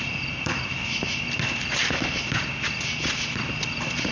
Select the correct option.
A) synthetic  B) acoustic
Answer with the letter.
B